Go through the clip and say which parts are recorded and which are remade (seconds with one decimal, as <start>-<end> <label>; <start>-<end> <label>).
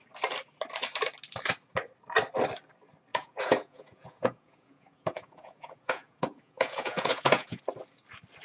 0.0-3.1 recorded; 3.1-7.6 remade; 7.6-8.4 recorded